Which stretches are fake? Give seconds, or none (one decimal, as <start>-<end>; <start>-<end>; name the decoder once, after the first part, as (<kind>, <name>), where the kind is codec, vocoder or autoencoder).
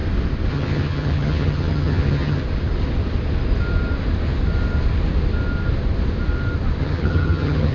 0.5-2.4 (vocoder, HiFi-GAN); 6.8-7.7